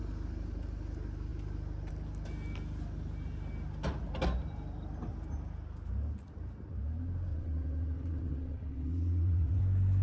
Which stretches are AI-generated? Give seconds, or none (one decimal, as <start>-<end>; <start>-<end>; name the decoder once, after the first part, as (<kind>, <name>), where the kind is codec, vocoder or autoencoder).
7.3-9.6 (vocoder, WaveNeXt)